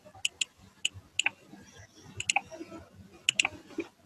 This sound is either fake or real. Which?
real